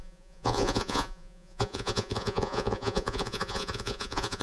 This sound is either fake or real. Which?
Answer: fake